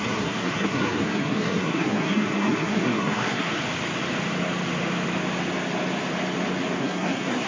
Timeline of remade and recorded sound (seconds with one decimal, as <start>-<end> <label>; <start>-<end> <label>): 0.0-3.5 remade; 3.5-6.8 recorded; 6.8-7.5 remade